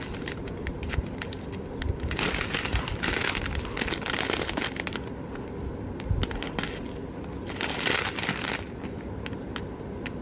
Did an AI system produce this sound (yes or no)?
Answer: no